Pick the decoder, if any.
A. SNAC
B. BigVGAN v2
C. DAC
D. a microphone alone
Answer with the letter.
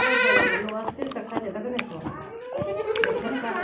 D